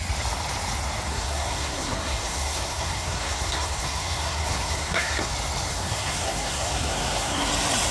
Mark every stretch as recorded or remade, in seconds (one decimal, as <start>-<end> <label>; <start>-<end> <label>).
0.0-1.1 recorded; 1.1-5.3 remade; 5.3-5.7 recorded; 5.7-7.5 remade; 7.5-7.9 recorded